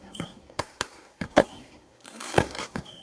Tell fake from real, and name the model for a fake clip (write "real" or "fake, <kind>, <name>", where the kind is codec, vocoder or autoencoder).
fake, codec, SNAC